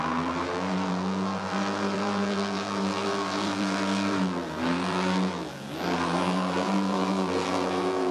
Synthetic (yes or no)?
yes